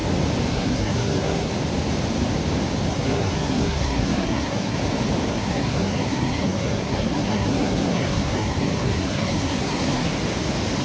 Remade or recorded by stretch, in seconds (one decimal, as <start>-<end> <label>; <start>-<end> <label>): 0.0-0.5 recorded; 0.5-1.5 remade; 1.5-2.9 recorded; 2.9-4.8 remade; 4.8-5.3 recorded; 5.3-10.1 remade; 10.1-10.8 recorded

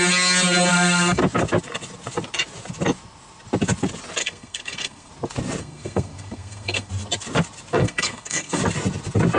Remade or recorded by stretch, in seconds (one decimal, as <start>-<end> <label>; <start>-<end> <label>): 0.0-0.7 recorded; 0.7-1.2 remade; 1.2-4.2 recorded; 4.2-5.1 remade; 5.1-5.6 recorded; 5.6-6.9 remade; 6.9-7.8 recorded; 7.8-8.6 remade; 8.6-9.4 recorded

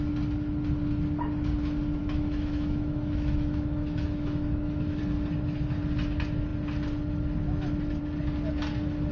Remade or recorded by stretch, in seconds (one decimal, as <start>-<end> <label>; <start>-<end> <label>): 0.0-2.0 recorded; 2.0-5.0 remade; 5.0-9.1 recorded

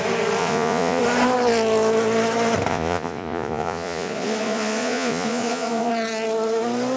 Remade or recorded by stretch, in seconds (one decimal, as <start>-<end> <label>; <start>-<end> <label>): 0.0-0.4 recorded; 0.4-1.0 remade; 1.0-2.7 recorded; 2.7-5.9 remade; 5.9-7.0 recorded

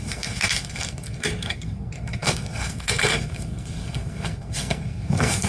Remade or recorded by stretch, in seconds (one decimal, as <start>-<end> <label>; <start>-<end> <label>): 0.0-5.5 remade

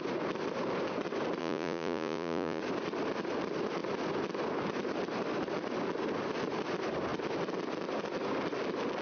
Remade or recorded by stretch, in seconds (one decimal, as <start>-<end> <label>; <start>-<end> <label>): 0.0-1.4 recorded; 1.4-2.6 remade; 2.6-9.0 recorded

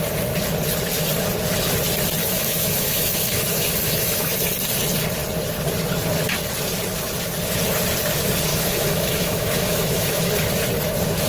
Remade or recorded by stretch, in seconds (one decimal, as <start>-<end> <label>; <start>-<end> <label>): 0.0-2.2 recorded; 2.2-4.3 remade; 4.3-8.5 recorded; 8.5-10.3 remade; 10.3-11.3 recorded